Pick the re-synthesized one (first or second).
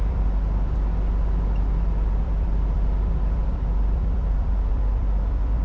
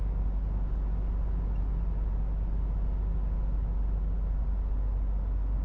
first